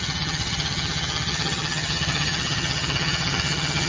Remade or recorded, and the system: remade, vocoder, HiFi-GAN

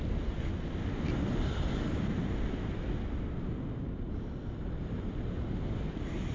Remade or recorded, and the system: recorded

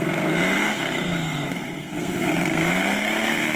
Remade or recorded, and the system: remade, codec, SNAC